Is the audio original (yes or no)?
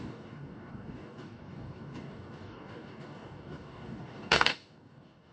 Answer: no